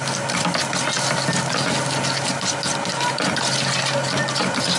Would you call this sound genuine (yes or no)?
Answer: yes